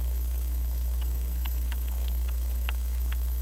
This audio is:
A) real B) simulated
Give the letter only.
B